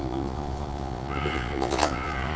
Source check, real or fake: fake